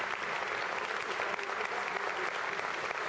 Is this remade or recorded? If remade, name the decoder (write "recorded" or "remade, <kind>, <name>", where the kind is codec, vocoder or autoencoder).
recorded